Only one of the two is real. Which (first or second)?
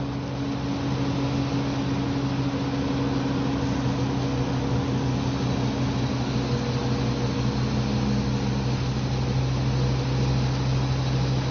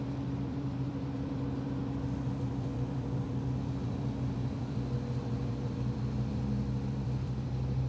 first